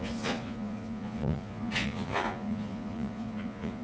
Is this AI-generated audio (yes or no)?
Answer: yes